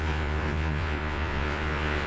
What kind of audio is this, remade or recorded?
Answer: remade